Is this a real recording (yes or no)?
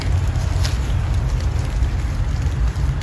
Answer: yes